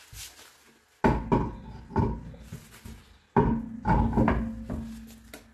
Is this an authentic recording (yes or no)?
yes